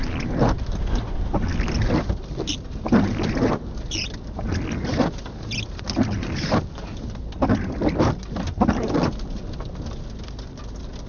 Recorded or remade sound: recorded